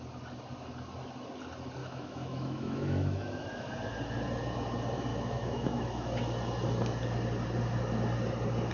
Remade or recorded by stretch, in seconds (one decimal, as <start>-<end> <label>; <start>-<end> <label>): 0.0-1.8 recorded; 1.8-3.7 remade; 3.7-5.1 recorded; 5.1-6.1 remade; 6.1-8.7 recorded